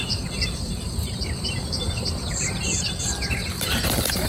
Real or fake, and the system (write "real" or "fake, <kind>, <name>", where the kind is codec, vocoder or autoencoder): fake, vocoder, BigVGAN v2